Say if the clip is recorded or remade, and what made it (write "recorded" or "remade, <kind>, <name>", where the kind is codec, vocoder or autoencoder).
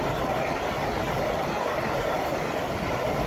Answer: recorded